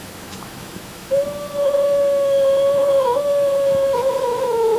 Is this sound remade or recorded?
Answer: remade